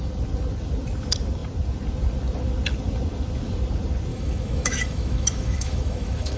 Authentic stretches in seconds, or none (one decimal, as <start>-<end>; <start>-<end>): 0.0-4.1